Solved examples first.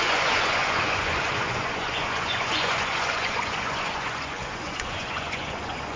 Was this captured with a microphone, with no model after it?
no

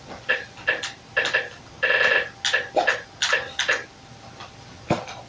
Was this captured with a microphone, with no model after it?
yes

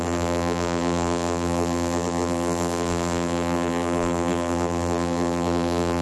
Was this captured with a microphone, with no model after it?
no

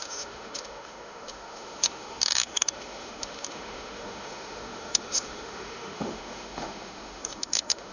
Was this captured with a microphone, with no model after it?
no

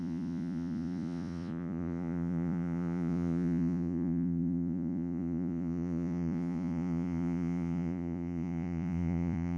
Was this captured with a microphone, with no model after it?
no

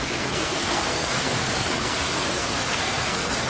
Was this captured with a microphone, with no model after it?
no